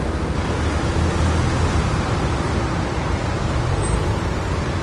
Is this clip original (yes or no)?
yes